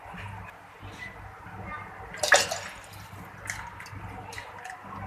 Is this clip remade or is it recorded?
recorded